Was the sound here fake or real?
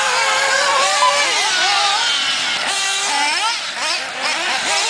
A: real